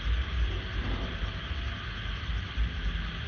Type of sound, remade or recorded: recorded